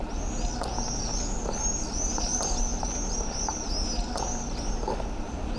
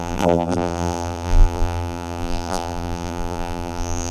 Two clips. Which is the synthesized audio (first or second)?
second